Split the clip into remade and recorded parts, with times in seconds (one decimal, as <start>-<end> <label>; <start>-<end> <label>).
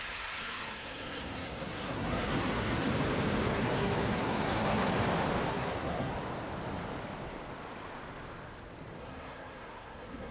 0.0-2.9 remade; 2.9-3.5 recorded; 3.5-4.9 remade; 4.9-5.5 recorded; 5.5-6.1 remade; 6.1-9.0 recorded; 9.0-10.3 remade